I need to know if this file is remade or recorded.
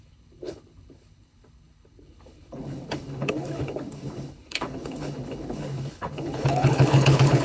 remade